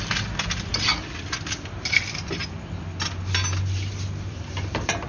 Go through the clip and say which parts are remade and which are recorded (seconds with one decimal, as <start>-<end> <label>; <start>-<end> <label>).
0.0-0.9 remade; 0.9-3.9 recorded; 3.9-5.1 remade